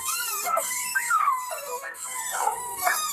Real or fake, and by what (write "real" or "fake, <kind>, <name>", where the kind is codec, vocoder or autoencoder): fake, codec, SNAC